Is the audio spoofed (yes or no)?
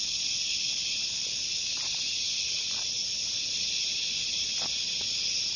no